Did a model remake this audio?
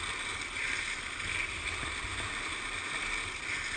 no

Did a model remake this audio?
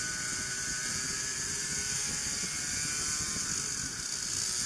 no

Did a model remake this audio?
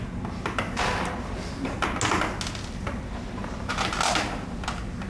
no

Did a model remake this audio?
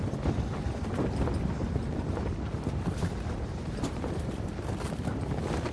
no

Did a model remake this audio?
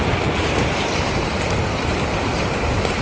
no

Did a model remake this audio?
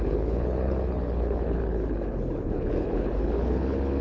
yes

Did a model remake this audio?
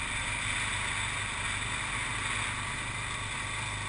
no